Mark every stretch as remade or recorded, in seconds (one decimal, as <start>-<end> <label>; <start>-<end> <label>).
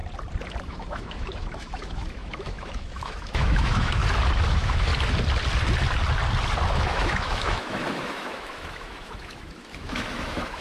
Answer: 0.0-0.6 recorded; 0.6-4.0 remade; 4.0-4.5 recorded; 4.5-4.9 remade; 4.9-6.7 recorded; 6.7-10.6 remade